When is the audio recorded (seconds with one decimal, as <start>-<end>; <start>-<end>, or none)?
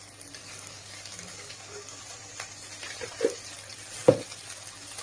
0.0-0.4; 2.0-5.0